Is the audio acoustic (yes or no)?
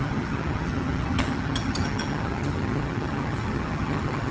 no